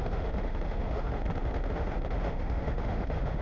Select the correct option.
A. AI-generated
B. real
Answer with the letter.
A